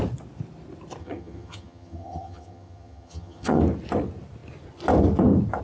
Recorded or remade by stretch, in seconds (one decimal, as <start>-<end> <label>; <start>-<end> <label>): 0.0-1.0 recorded; 1.0-3.6 remade; 3.6-5.6 recorded